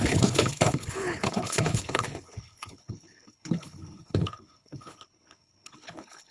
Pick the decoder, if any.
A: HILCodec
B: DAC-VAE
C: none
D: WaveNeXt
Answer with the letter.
A